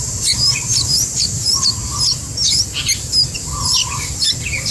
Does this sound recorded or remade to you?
recorded